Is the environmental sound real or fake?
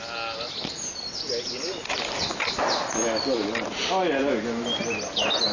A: real